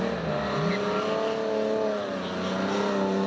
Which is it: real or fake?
real